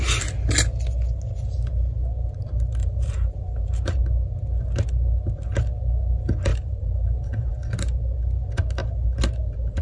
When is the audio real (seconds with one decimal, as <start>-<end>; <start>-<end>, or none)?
0.0-2.8; 4.0-6.5; 7.5-9.8